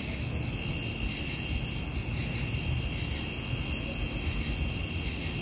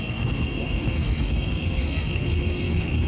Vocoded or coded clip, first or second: second